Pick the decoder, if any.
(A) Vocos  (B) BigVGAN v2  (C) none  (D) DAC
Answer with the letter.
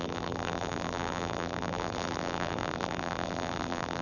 B